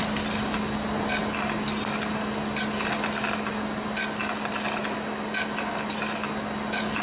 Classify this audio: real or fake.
real